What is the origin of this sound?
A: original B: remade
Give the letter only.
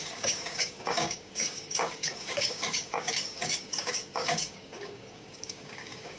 B